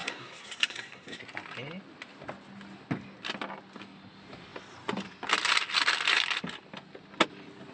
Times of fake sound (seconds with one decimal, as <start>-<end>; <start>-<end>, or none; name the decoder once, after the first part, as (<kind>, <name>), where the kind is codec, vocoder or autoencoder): 0.0-1.2 (codec, SNAC)